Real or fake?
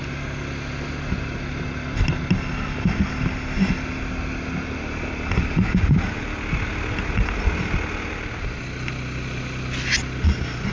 real